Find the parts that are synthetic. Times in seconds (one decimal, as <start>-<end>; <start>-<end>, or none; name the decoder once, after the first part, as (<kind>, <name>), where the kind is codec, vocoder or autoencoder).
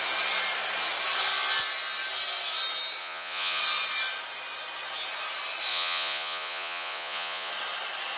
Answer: 3.0-3.6 (vocoder, Vocos); 5.7-7.5